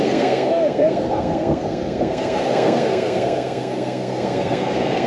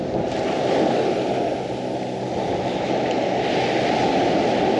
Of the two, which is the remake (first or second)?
first